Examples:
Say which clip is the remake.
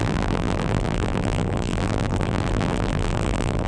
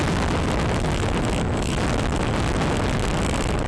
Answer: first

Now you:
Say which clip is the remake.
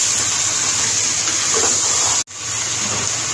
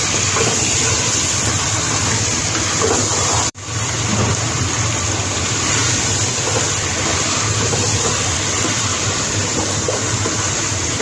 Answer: second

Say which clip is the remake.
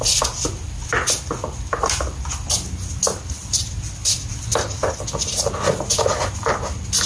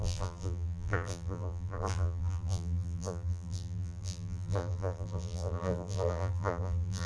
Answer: second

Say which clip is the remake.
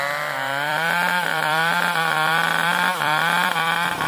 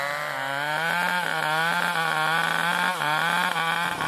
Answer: first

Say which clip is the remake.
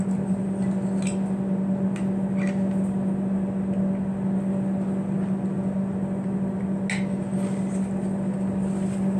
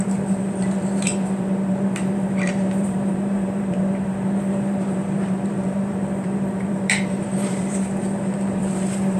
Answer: second